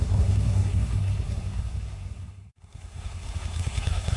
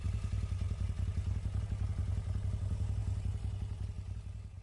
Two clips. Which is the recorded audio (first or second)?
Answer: second